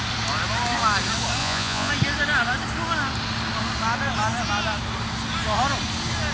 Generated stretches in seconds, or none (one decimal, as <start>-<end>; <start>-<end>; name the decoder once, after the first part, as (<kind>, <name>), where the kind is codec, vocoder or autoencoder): 1.4-1.9 (vocoder, Vocos)